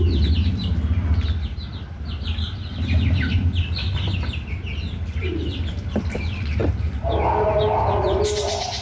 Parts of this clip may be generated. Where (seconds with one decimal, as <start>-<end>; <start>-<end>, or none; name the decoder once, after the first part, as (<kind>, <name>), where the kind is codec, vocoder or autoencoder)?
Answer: none